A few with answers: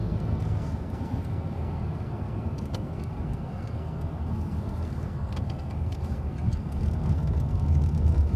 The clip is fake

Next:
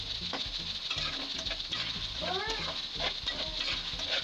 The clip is real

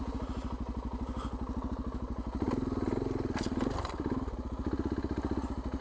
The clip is real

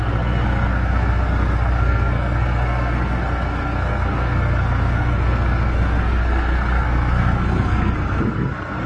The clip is fake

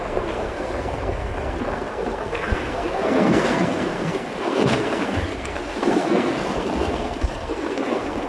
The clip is fake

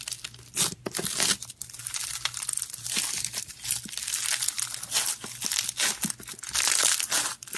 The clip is real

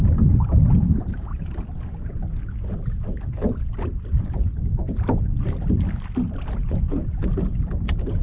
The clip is real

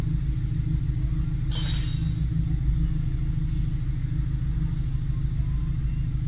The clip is real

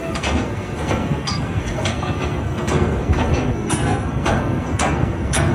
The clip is fake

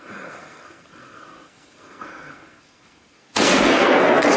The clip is fake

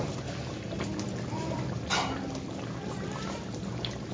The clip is real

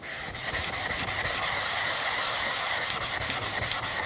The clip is real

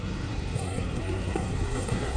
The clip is fake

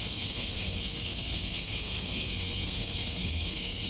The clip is fake